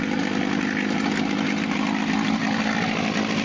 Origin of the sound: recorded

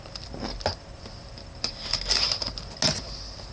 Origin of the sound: recorded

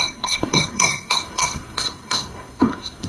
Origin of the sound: remade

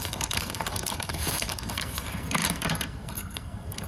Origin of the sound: remade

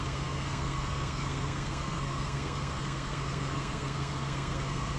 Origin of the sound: remade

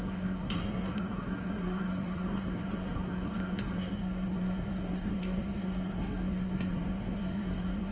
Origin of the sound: remade